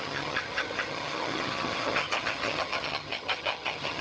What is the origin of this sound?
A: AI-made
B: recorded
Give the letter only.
A